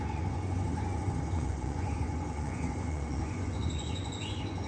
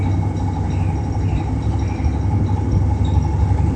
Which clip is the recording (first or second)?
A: second